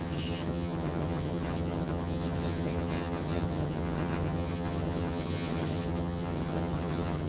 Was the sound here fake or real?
fake